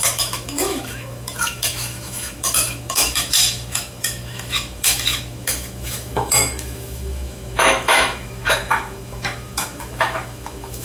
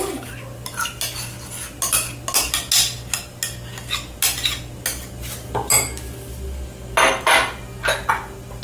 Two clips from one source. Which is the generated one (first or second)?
first